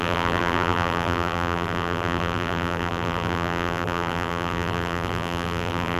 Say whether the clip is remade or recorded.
remade